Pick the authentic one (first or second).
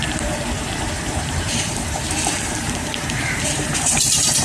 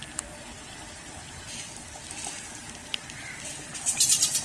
second